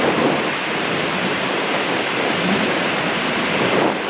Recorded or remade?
remade